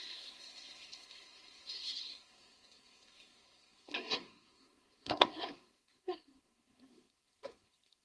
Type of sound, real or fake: fake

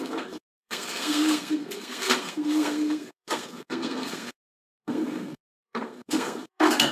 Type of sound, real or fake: fake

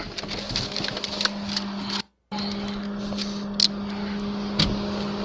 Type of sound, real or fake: real